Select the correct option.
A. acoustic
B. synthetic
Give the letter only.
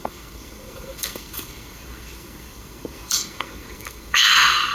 B